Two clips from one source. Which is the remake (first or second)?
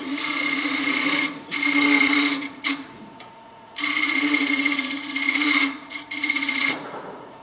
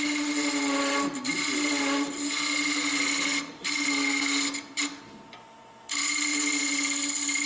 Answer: first